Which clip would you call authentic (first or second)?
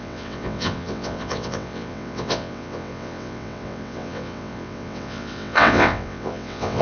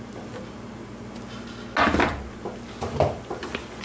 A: second